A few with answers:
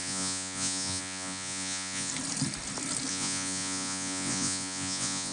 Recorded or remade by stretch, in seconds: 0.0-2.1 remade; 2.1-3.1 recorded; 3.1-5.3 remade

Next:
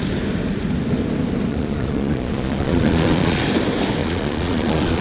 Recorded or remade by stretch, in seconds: 0.0-1.5 recorded; 1.5-3.4 remade; 3.4-4.0 recorded; 4.0-5.0 remade